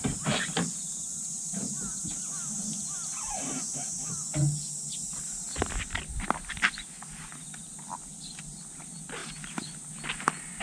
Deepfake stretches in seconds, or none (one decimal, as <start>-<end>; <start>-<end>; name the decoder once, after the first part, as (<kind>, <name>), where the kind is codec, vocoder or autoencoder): none